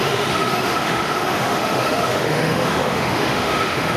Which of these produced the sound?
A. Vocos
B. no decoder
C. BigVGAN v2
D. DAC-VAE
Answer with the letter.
D